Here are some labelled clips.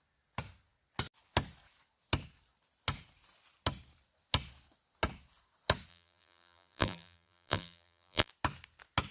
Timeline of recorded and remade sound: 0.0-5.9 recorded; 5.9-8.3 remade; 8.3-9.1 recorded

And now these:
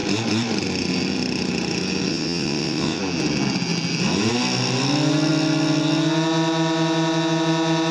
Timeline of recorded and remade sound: 0.0-2.1 recorded; 2.1-3.0 remade; 3.0-7.9 recorded

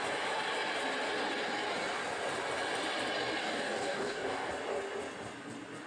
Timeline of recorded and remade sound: 0.0-3.4 recorded; 3.4-4.5 remade; 4.5-5.9 recorded